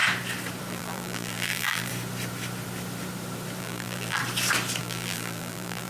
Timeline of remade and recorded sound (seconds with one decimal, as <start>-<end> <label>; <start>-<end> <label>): 0.0-0.7 recorded; 0.7-1.9 remade; 1.9-3.6 recorded; 3.6-4.2 remade; 4.2-4.8 recorded; 4.8-5.9 remade